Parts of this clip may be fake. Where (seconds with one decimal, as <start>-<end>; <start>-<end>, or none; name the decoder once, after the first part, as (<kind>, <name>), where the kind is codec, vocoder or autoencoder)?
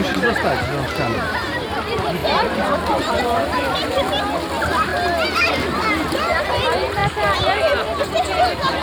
2.2-3.2 (vocoder, BigVGAN v2)